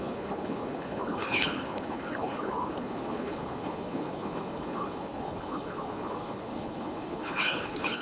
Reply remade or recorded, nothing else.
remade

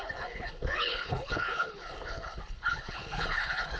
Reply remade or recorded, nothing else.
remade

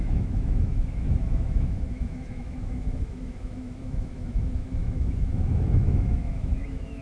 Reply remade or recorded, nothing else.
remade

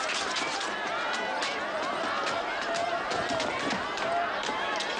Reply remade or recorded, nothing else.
remade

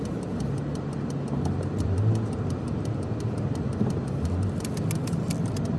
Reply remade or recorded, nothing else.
recorded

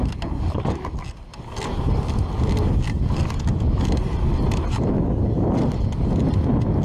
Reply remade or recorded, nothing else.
recorded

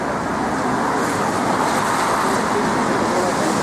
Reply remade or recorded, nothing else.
recorded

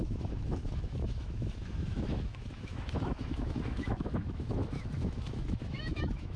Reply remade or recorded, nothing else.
remade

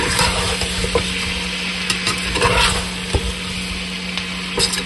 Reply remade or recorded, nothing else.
recorded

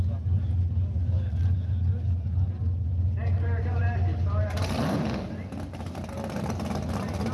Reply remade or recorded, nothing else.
recorded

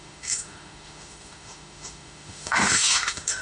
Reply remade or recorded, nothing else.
remade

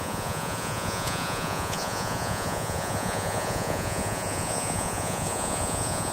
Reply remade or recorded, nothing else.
remade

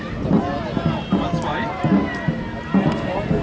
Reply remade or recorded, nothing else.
recorded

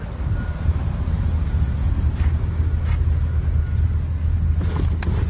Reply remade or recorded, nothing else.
recorded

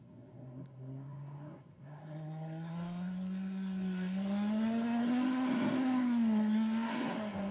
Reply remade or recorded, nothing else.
remade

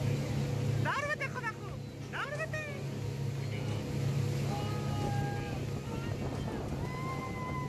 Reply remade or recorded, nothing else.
recorded